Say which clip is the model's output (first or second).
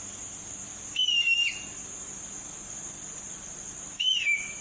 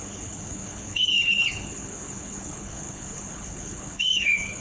second